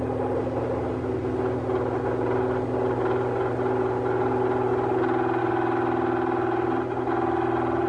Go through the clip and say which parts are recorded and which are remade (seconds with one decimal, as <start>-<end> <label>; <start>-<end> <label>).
0.0-7.9 recorded